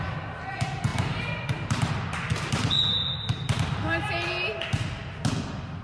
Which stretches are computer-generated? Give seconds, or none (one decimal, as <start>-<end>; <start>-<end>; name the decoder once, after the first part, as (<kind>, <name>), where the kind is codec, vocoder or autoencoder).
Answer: 0.9-1.9 (vocoder, BigVGAN v2)